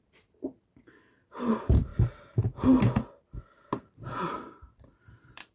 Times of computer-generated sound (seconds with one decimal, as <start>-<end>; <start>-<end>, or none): 0.0-1.9; 3.8-5.5